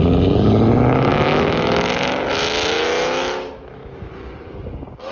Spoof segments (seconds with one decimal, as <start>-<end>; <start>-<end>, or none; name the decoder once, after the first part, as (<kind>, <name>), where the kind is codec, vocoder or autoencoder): 1.1-2.3 (autoencoder, DAC-VAE); 3.2-4.1